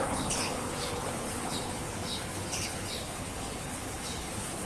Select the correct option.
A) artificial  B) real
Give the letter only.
A